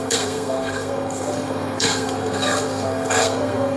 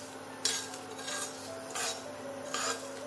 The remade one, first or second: first